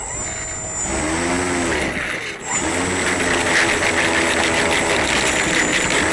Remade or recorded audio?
recorded